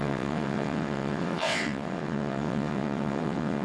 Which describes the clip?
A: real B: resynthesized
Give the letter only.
B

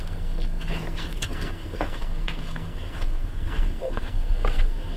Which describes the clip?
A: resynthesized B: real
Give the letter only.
A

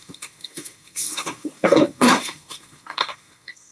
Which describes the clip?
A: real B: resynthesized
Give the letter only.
B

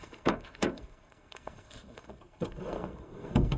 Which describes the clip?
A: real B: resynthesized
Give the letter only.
B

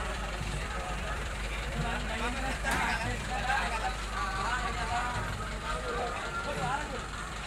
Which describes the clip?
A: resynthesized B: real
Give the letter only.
A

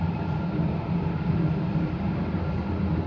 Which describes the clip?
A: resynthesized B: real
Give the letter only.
B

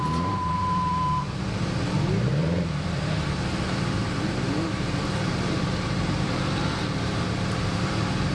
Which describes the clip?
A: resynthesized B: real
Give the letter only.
A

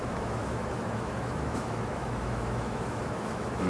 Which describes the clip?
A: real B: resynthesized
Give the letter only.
B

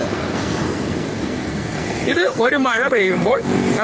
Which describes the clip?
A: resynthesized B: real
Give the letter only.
A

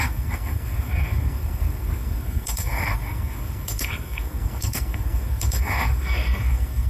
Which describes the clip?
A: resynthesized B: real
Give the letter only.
A